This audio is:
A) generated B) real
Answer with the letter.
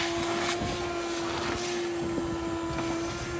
B